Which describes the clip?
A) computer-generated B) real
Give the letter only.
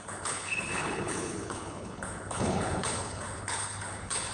A